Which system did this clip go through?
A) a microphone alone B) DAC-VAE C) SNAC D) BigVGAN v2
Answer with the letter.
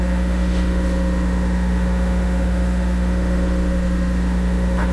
B